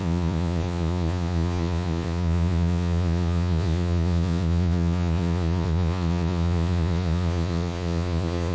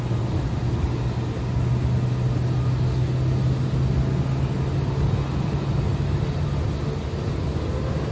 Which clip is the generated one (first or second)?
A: first